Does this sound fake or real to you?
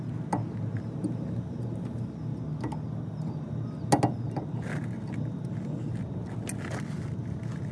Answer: real